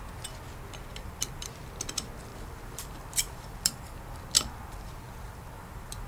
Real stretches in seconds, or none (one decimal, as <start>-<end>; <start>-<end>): 0.0-0.9; 1.5-2.3